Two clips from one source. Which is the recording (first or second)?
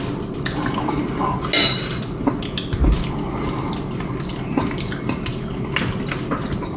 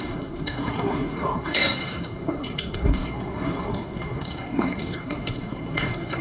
first